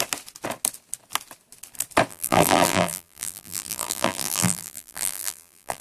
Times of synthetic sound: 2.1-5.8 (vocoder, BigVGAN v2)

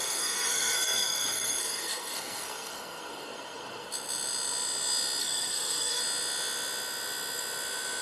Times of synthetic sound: 0.0-3.9 (codec, SNAC); 5.2-6.0

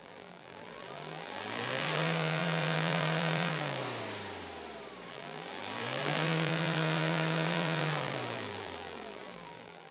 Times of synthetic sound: 0.0-3.8 (vocoder, BigVGAN v2); 5.1-9.9

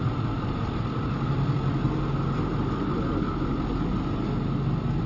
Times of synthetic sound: none

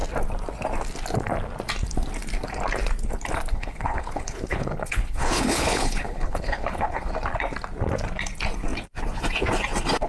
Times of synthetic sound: 3.5-7.1 (codec, HILCodec)

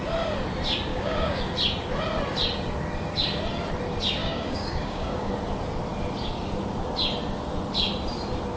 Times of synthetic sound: 0.9-1.4 (codec, DAC); 4.2-5.3

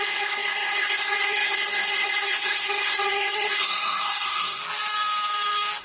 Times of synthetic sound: 0.0-4.6 (codec, SNAC)

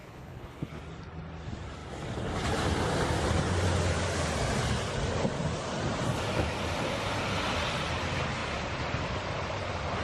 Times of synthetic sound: 0.0-0.8 (codec, HILCodec)